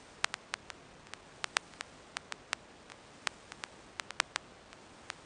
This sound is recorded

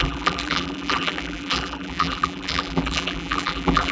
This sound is remade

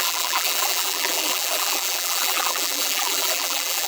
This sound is remade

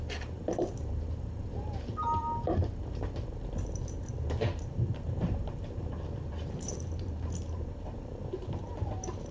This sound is remade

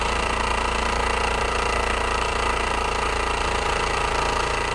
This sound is recorded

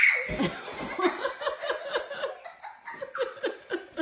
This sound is recorded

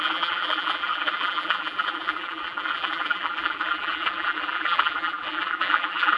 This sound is remade